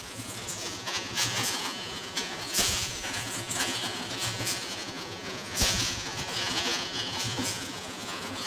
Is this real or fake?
fake